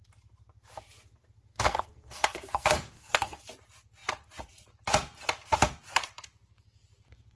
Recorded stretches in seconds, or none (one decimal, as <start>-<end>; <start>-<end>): 0.0-1.5; 3.4-7.4